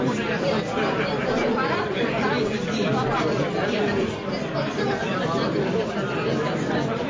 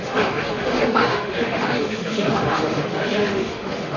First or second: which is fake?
second